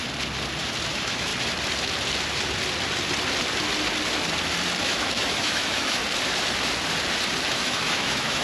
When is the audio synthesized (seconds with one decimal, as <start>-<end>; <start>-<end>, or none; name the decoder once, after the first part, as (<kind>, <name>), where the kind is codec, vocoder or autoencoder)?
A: 0.9-1.3 (autoencoder, DAC-VAE); 4.8-6.0; 7.5-8.4